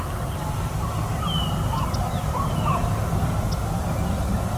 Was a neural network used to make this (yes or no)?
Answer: no